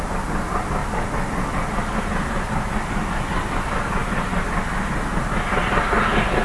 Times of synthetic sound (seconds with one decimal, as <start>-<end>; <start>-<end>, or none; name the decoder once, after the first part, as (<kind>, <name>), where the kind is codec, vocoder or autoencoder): none